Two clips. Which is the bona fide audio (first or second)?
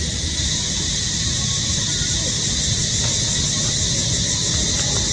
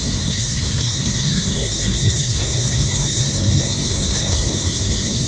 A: first